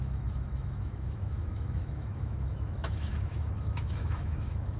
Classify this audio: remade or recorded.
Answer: remade